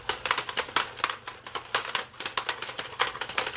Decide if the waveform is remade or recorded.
recorded